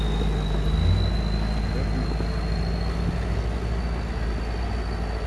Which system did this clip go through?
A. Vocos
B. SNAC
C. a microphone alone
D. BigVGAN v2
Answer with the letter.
C